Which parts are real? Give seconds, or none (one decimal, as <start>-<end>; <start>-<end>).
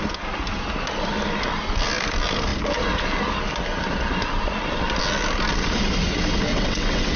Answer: 0.0-6.5